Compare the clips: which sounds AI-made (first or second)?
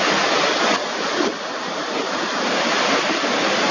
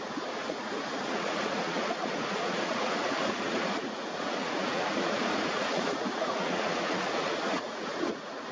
second